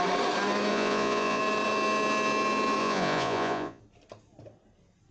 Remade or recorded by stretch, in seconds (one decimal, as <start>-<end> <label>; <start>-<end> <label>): 0.0-0.7 recorded; 0.7-1.4 remade; 1.4-2.8 recorded; 2.8-3.8 remade; 3.8-5.1 recorded